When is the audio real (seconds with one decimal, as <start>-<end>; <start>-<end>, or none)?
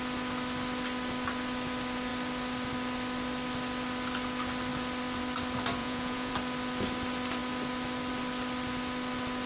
0.0-5.8; 6.3-9.5